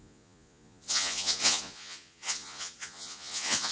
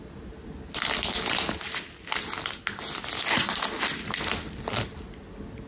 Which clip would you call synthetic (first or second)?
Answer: first